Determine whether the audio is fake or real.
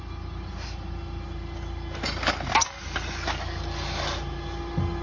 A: real